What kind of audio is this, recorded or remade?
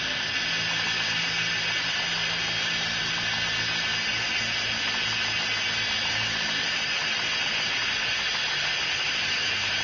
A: recorded